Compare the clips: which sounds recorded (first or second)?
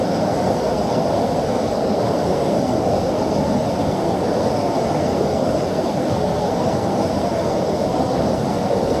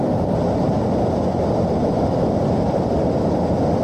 second